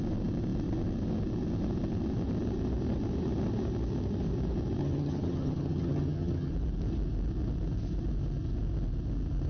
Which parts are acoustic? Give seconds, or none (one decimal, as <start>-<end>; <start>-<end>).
0.0-4.8; 6.5-9.5